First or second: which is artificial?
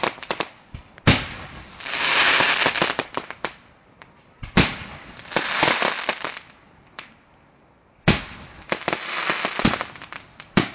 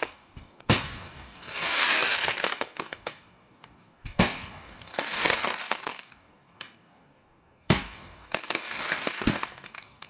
second